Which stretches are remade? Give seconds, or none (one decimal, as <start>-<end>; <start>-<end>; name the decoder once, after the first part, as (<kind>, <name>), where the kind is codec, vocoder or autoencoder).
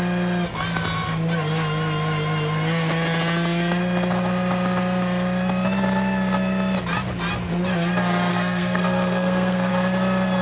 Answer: 8.3-9.7 (codec, SNAC)